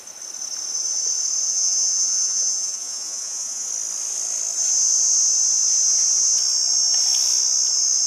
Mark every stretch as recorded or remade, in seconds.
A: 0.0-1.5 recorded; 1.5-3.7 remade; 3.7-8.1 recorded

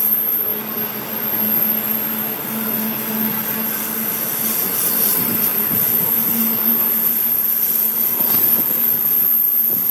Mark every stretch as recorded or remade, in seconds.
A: 0.0-0.5 remade; 0.5-4.9 recorded; 4.9-9.9 remade

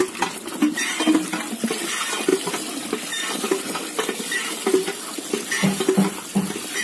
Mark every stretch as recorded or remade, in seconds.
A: 0.0-6.8 recorded

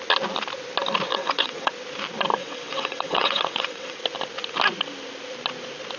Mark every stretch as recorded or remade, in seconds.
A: 0.0-1.1 recorded; 1.1-1.7 remade; 1.7-2.4 recorded; 2.4-4.0 remade; 4.0-6.0 recorded

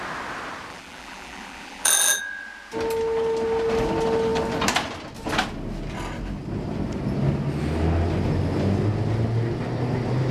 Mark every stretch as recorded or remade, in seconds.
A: 0.0-0.7 recorded; 0.7-2.2 remade; 2.2-10.3 recorded

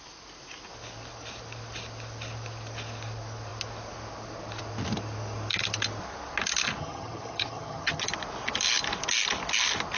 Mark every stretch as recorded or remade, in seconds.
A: 0.0-6.8 recorded; 6.8-8.0 remade; 8.0-10.0 recorded

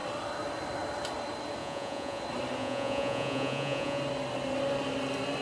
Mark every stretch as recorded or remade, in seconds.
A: 0.0-1.6 recorded; 1.6-2.2 remade; 2.2-2.6 recorded; 2.6-4.0 remade; 4.0-5.4 recorded

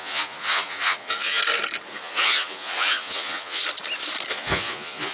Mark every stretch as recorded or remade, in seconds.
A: 0.0-1.4 remade; 1.4-1.9 recorded; 1.9-3.6 remade; 3.6-4.3 recorded; 4.3-5.1 remade